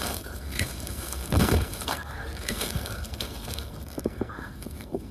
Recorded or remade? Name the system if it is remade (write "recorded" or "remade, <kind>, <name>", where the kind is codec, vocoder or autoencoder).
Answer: remade, codec, SNAC